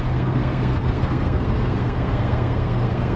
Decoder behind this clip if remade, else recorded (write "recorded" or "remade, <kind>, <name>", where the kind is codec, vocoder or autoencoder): remade, codec, SNAC